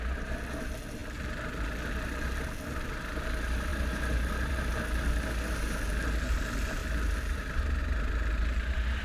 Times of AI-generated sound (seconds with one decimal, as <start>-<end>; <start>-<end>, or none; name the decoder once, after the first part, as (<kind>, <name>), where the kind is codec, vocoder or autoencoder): 3.7-4.6 (vocoder, BigVGAN v2)